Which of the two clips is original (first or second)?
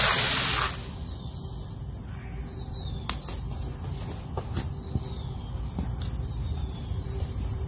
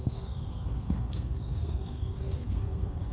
first